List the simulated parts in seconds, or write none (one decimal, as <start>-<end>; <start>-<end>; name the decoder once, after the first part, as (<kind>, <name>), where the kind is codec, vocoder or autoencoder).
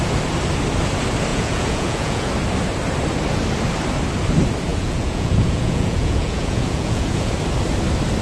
1.3-2.3 (vocoder, Vocos); 4.7-7.3